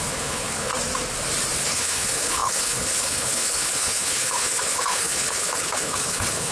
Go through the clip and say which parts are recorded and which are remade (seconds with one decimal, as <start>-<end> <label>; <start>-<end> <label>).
0.0-0.7 remade; 0.7-1.6 recorded; 1.6-6.5 remade